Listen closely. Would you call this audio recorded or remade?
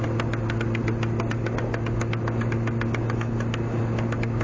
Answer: recorded